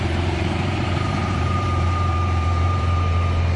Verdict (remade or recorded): remade